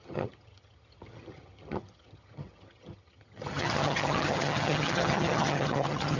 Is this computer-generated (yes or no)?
yes